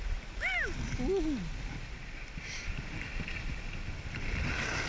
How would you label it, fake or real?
real